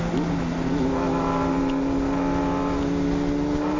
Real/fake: real